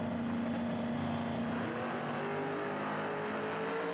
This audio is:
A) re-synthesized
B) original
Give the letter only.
B